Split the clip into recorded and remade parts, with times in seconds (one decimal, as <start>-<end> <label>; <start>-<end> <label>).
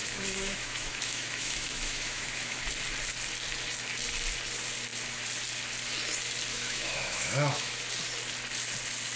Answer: 0.0-2.6 remade; 2.6-6.5 recorded; 6.5-7.8 remade; 7.8-9.2 recorded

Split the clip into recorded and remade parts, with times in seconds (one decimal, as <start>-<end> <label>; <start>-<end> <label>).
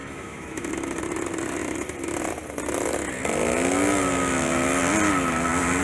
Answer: 0.0-0.7 remade; 0.7-5.8 recorded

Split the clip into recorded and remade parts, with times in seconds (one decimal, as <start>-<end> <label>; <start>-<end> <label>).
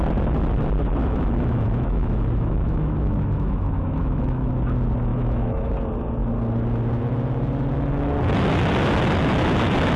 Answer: 0.0-1.0 recorded; 1.0-4.5 remade; 4.5-5.1 recorded; 5.1-5.7 remade; 5.7-10.0 recorded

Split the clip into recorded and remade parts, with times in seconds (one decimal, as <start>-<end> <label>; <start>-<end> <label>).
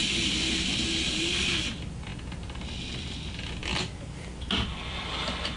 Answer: 0.0-5.6 recorded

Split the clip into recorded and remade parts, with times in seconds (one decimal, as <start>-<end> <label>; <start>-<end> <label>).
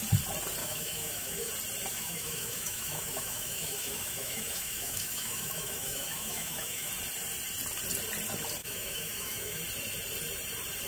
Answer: 0.0-0.6 recorded; 0.6-1.5 remade; 1.5-1.9 recorded; 1.9-6.9 remade; 6.9-8.6 recorded; 8.6-9.6 remade; 9.6-10.9 recorded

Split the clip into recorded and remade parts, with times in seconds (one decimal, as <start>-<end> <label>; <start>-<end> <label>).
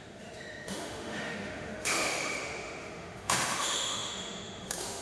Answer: 0.0-5.0 remade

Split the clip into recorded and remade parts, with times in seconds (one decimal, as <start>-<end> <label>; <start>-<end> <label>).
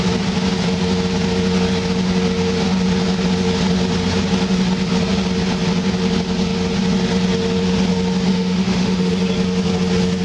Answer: 0.0-8.3 recorded; 8.3-9.1 remade; 9.1-10.2 recorded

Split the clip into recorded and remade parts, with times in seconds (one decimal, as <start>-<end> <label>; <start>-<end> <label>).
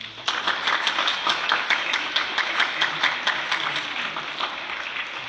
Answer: 0.0-1.1 recorded; 1.1-2.9 remade; 2.9-5.3 recorded